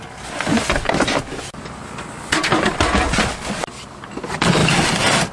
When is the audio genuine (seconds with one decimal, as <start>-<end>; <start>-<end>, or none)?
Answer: 0.0-5.3